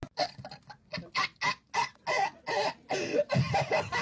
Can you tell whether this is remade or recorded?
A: recorded